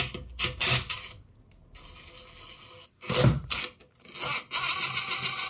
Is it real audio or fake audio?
real